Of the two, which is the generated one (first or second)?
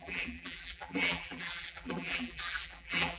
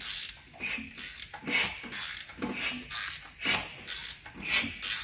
first